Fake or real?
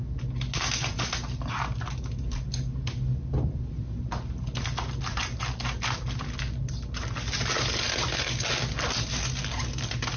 real